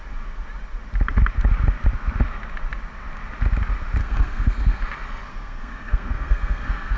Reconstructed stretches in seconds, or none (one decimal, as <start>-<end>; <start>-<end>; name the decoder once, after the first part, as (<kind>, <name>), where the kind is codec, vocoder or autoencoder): 4.0-4.8 (codec, SNAC); 5.3-7.0